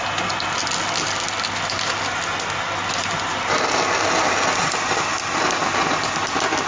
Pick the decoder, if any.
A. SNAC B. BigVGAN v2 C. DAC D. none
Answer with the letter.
D